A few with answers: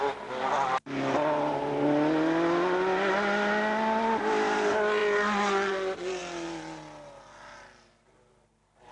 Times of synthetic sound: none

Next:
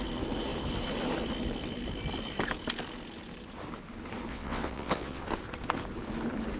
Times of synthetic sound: 4.3-5.2

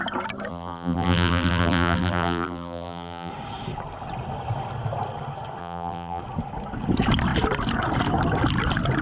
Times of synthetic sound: 0.5-3.3; 5.6-6.2

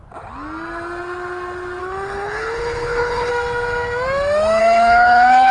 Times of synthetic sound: 1.8-3.3; 4.6-5.5

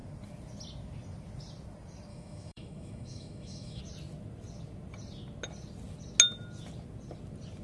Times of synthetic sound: 2.1-3.8

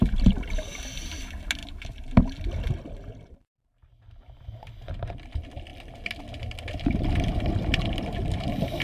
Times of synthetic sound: none

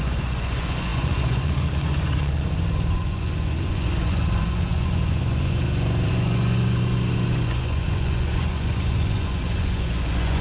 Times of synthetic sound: 0.0-10.4